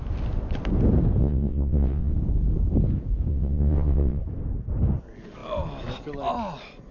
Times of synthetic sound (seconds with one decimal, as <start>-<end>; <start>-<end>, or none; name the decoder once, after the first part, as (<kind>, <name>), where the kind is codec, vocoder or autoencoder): 1.2-2.1 (vocoder, WaveNeXt); 3.3-4.2